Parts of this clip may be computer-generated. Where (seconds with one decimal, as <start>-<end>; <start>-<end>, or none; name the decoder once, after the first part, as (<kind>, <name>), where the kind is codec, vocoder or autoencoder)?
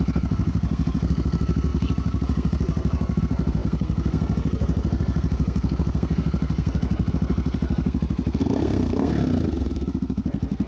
0.0-10.7 (codec, SNAC)